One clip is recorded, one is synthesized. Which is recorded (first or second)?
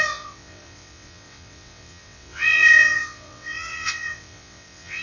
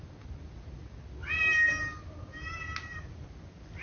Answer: second